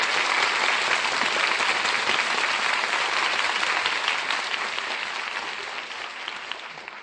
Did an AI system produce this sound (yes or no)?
no